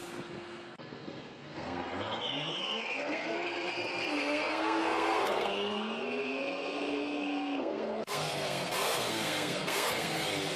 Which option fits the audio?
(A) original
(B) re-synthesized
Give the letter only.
B